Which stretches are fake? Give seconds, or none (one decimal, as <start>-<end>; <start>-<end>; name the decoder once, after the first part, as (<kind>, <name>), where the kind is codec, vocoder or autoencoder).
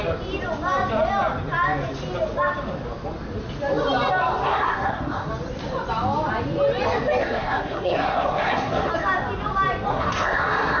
4.4-5.3 (codec, SNAC); 7.2-8.9; 9.9-10.8